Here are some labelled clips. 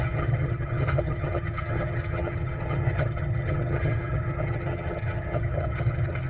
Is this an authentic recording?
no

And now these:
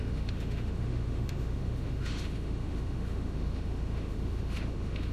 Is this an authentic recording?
no